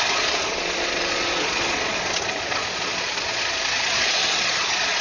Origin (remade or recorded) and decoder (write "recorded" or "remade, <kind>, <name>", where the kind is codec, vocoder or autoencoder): remade, vocoder, Vocos